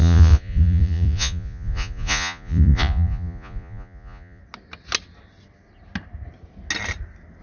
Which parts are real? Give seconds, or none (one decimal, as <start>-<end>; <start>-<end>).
4.4-7.4